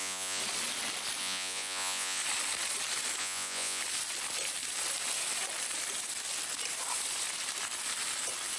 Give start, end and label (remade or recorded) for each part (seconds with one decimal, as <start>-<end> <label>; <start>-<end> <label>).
0.0-0.4 remade; 0.4-1.2 recorded; 1.2-2.2 remade; 2.2-3.2 recorded; 3.2-3.8 remade; 3.8-8.6 recorded